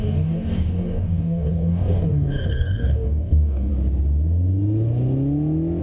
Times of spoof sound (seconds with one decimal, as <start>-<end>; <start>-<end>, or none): 0.0-3.7